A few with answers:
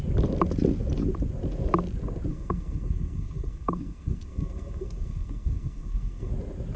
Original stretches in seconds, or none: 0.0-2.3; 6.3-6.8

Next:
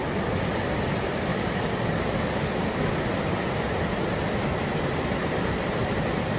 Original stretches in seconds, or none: 0.0-1.3; 2.9-6.4

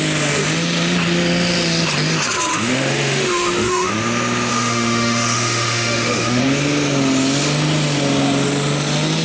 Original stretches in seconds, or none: 0.0-2.5; 3.9-4.5; 6.4-9.2

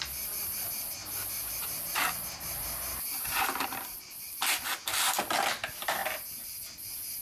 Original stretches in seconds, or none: 0.0-1.0; 4.3-7.2

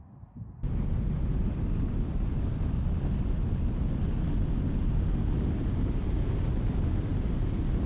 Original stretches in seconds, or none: 0.0-7.9